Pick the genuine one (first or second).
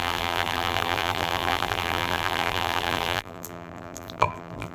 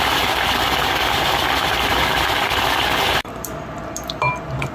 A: second